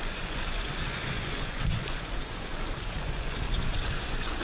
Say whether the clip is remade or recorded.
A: remade